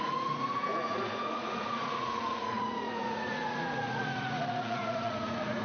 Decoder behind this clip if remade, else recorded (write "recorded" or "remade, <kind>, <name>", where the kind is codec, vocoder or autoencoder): remade, vocoder, Vocos